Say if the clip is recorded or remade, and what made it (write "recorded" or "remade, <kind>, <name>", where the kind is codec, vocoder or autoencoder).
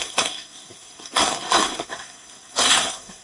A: remade, codec, SNAC